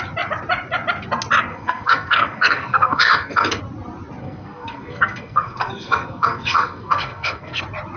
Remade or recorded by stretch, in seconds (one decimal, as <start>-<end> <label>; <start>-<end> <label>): 0.0-1.5 recorded; 1.5-3.6 remade; 3.6-4.2 recorded; 4.2-7.6 remade; 7.6-8.0 recorded